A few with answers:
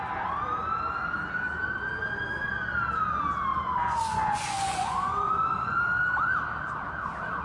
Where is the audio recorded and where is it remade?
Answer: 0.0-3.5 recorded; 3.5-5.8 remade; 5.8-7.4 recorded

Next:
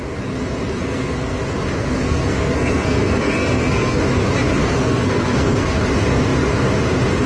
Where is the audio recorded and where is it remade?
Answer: 0.0-0.8 recorded; 0.8-1.4 remade; 1.4-1.8 recorded; 1.8-4.0 remade; 4.0-4.6 recorded; 4.6-5.8 remade; 5.8-7.3 recorded

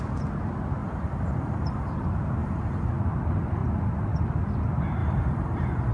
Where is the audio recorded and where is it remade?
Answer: 0.0-0.8 recorded; 0.8-1.9 remade; 1.9-2.4 recorded; 2.4-2.9 remade; 2.9-5.0 recorded; 5.0-5.9 remade

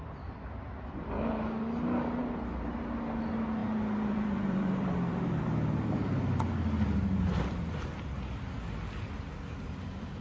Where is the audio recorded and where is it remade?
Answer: 0.0-3.6 recorded; 3.6-5.4 remade; 5.4-10.2 recorded